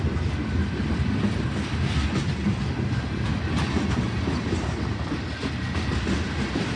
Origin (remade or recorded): recorded